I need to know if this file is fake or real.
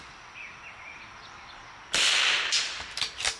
real